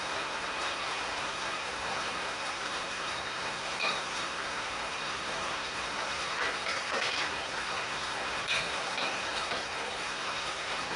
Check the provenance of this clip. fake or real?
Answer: fake